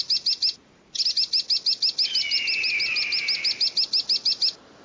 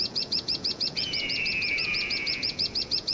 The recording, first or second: first